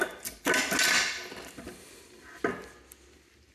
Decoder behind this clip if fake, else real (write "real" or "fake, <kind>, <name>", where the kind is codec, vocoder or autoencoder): real